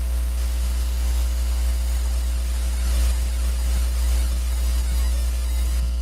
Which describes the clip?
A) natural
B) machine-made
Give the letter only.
A